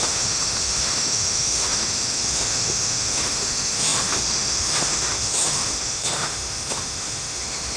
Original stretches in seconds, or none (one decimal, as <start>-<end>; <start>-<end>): none